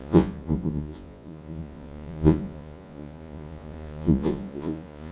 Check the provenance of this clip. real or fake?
fake